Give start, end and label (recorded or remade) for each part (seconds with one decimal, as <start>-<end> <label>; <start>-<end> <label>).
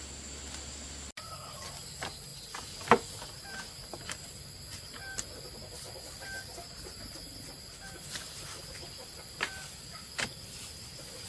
0.0-11.3 recorded